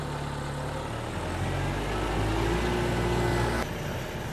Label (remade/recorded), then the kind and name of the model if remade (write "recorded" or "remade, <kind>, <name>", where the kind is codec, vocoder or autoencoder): recorded